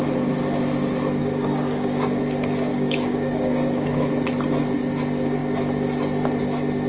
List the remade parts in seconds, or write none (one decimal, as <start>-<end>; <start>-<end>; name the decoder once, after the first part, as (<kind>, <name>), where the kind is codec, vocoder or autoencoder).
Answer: 1.2-2.2 (codec, DAC); 2.7-4.1